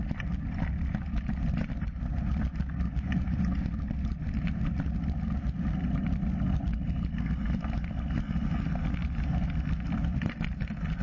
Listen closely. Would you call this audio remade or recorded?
recorded